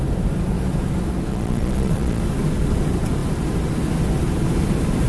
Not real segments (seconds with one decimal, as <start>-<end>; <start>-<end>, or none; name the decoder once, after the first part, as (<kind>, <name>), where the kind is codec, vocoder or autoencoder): 1.3-2.2 (vocoder, Vocos)